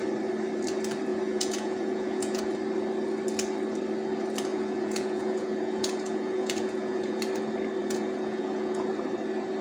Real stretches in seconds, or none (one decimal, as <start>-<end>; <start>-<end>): 0.0-1.1; 2.4-4.5; 7.2-7.8; 8.9-9.6